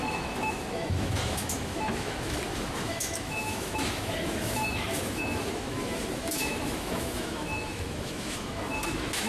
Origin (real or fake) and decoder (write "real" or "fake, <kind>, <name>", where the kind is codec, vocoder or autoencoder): fake, autoencoder, DAC-VAE